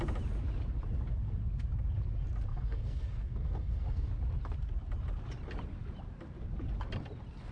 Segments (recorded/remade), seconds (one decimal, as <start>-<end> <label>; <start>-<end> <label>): 0.0-2.5 recorded; 2.5-4.1 remade; 4.1-7.5 recorded